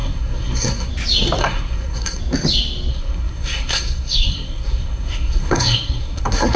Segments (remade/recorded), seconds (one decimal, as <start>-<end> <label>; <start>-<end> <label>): 0.0-0.9 remade; 0.9-1.4 recorded; 1.4-2.2 remade; 2.2-2.9 recorded; 2.9-6.6 remade